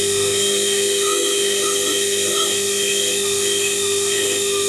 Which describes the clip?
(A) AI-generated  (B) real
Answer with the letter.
A